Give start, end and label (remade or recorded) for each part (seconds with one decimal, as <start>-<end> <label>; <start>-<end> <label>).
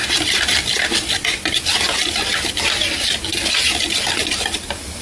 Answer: 0.0-5.0 recorded